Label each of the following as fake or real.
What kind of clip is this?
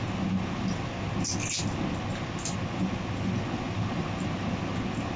real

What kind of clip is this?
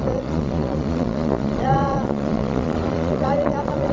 fake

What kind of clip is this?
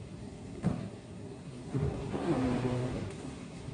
fake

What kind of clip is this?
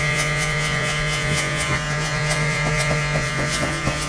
fake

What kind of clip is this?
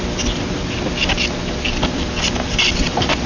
real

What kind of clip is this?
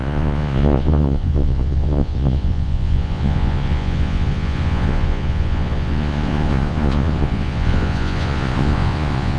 fake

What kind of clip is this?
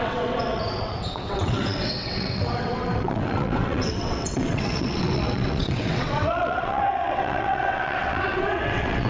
fake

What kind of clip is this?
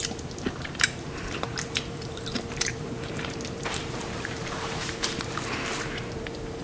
fake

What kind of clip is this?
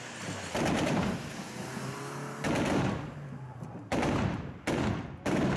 real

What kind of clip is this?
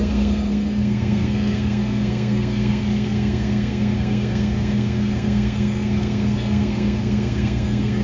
fake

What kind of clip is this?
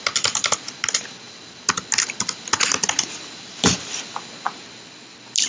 real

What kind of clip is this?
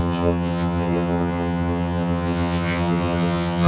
fake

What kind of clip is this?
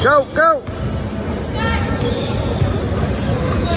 real